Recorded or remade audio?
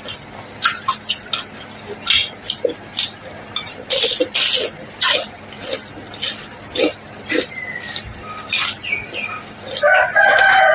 recorded